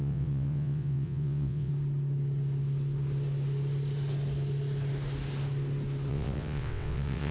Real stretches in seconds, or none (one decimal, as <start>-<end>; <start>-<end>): 1.7-6.1